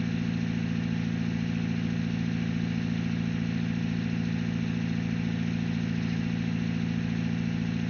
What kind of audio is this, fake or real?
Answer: real